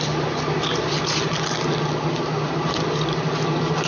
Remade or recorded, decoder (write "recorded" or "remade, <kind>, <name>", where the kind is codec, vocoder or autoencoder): recorded